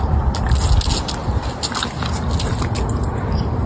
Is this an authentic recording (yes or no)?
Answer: yes